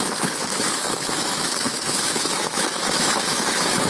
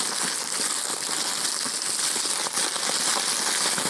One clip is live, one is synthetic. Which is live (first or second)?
second